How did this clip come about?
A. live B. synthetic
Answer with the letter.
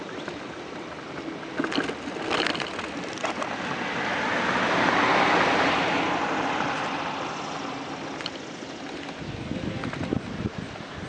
A